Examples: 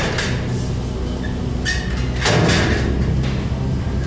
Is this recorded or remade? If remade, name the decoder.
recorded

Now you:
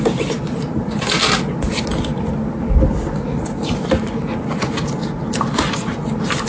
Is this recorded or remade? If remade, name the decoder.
recorded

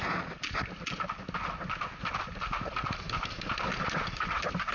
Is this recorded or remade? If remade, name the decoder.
recorded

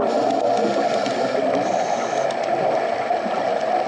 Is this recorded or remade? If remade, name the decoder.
recorded